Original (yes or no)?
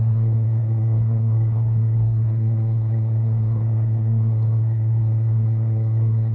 no